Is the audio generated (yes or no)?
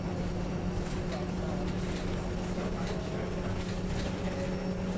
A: no